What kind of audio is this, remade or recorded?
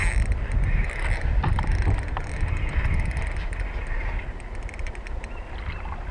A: recorded